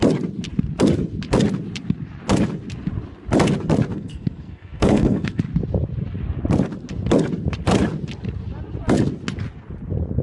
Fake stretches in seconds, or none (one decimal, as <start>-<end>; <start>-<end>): 3.9-5.4